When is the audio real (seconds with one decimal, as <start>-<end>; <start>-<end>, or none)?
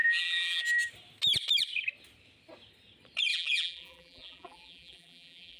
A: 0.6-3.3